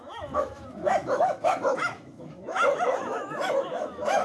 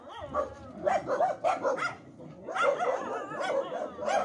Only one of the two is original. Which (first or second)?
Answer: second